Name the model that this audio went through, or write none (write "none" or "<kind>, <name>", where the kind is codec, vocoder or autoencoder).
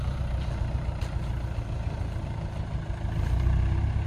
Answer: vocoder, BigVGAN v2